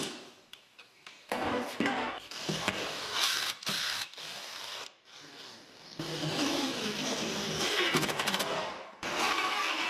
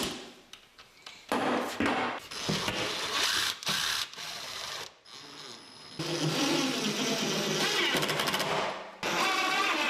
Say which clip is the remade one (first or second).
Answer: first